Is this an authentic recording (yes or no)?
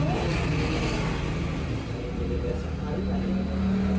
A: yes